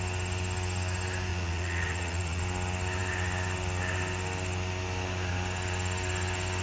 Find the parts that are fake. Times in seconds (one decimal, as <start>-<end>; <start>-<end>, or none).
1.3-2.4